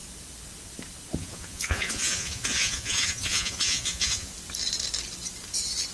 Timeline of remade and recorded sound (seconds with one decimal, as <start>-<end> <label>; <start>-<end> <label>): 0.0-1.2 recorded; 1.2-4.3 remade; 4.3-5.9 recorded